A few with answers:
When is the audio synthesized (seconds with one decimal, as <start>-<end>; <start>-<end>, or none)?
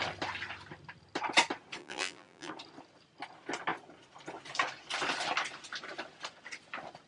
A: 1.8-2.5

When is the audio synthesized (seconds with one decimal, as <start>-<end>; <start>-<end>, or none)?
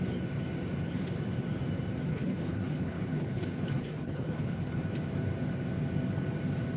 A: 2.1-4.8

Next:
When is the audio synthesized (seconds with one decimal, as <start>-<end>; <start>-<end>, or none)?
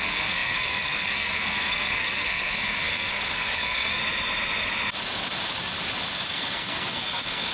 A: 0.0-4.0; 6.3-7.5